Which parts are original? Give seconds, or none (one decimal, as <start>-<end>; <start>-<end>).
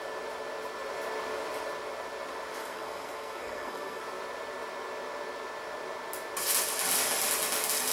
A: 0.0-2.6; 4.0-7.9